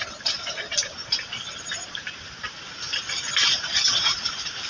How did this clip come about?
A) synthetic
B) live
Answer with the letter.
A